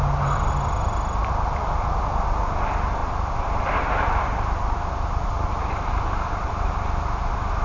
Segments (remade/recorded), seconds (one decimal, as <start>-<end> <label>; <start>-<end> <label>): 0.0-3.0 recorded; 3.0-6.9 remade; 6.9-7.6 recorded

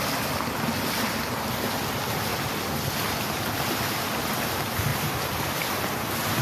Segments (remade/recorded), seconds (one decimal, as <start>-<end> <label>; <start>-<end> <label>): 0.0-2.3 recorded; 2.3-4.2 remade; 4.2-4.9 recorded; 4.9-5.7 remade; 5.7-6.4 recorded

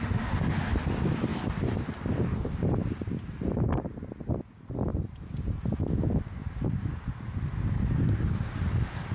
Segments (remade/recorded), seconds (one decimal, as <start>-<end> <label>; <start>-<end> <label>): 0.0-1.3 recorded; 1.3-3.6 remade; 3.6-4.9 recorded; 4.9-5.8 remade; 5.8-9.1 recorded

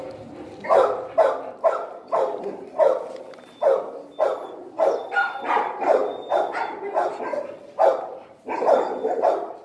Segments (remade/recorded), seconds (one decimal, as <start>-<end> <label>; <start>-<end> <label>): 0.0-9.6 recorded

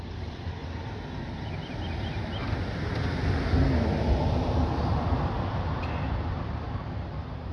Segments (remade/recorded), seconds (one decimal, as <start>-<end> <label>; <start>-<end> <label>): 0.0-0.6 remade; 0.6-4.1 recorded; 4.1-7.5 remade

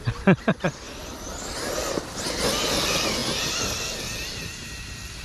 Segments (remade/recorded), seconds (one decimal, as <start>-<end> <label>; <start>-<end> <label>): 0.0-1.0 recorded; 1.0-1.7 remade; 1.7-5.2 recorded

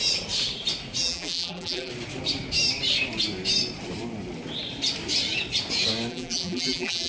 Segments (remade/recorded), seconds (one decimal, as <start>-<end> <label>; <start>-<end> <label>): 0.0-1.0 recorded; 1.0-1.9 remade; 1.9-6.1 recorded; 6.1-7.1 remade